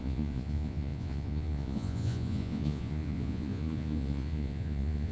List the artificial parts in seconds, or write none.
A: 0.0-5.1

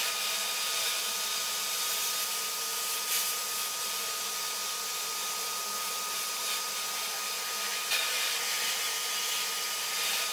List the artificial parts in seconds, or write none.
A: none

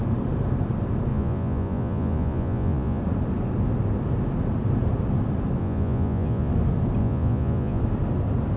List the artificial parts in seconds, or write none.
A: 1.1-3.0; 5.6-6.5; 7.0-7.8

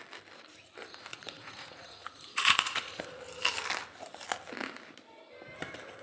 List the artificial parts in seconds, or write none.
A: 1.1-3.0

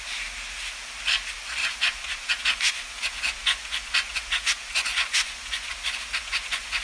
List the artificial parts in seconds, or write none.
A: 1.6-5.7; 6.2-6.8

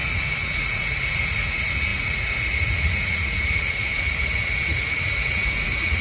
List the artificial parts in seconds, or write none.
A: 0.0-6.0